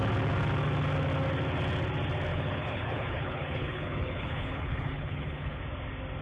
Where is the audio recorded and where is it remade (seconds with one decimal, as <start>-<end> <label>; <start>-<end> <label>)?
0.0-2.3 recorded; 2.3-5.6 remade; 5.6-6.2 recorded

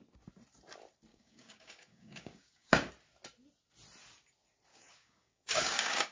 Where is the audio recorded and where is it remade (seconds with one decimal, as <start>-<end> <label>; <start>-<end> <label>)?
0.0-1.1 recorded; 1.1-2.9 remade; 2.9-4.7 recorded; 4.7-6.1 remade

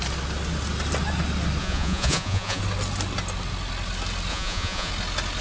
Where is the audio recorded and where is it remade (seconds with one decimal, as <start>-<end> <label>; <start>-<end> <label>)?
0.0-1.6 recorded; 1.6-2.6 remade; 2.6-4.3 recorded; 4.3-4.9 remade; 4.9-5.4 recorded

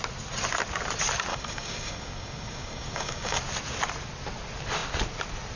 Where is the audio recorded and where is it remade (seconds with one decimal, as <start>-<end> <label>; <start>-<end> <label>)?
0.0-1.3 recorded; 1.3-3.4 remade; 3.4-5.6 recorded

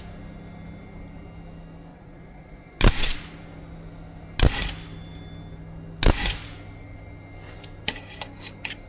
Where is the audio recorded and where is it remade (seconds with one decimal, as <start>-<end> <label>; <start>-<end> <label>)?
0.0-1.9 recorded; 1.9-3.2 remade; 3.2-8.9 recorded

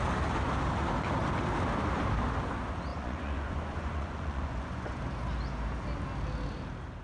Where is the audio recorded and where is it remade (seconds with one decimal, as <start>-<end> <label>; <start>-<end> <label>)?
0.0-2.9 recorded; 2.9-5.0 remade; 5.0-7.0 recorded

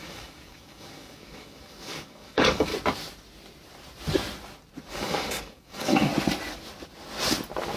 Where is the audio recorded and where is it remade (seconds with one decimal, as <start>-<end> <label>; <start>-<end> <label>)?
0.0-2.7 remade; 2.7-4.9 recorded; 4.9-6.1 remade; 6.1-7.8 recorded